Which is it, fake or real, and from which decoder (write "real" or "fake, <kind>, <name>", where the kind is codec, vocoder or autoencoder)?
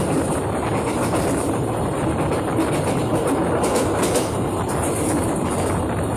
real